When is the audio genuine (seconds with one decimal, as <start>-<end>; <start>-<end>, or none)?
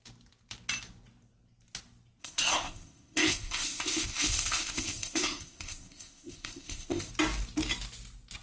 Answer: 0.0-2.2; 7.1-8.4